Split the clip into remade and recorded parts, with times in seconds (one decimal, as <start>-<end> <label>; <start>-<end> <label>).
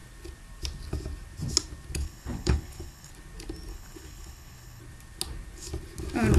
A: 0.0-2.0 recorded; 2.0-3.1 remade; 3.1-3.7 recorded; 3.7-4.8 remade; 4.8-6.4 recorded